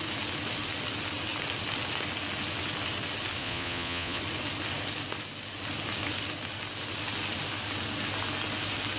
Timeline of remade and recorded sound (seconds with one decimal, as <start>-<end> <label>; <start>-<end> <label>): 0.0-3.4 recorded; 3.4-4.2 remade; 4.2-9.0 recorded